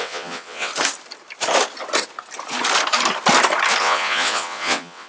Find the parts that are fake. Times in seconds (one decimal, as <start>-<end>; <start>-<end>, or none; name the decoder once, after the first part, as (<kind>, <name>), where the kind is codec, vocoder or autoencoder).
0.0-0.7 (vocoder, WaveNeXt); 3.8-5.1